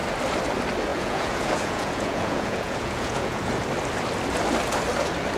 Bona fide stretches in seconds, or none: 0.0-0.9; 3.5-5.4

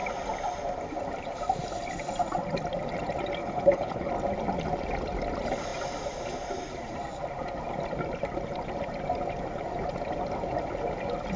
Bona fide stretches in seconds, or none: 0.0-3.4; 4.1-11.4

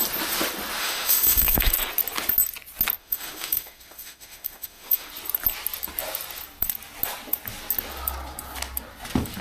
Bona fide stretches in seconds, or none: 0.0-0.8; 1.7-3.0; 5.1-9.4

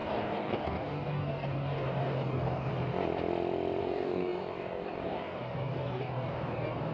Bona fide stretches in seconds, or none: 2.7-3.8

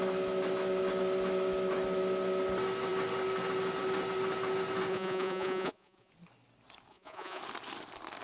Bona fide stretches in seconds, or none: 0.0-4.9; 6.1-6.9; 7.4-8.2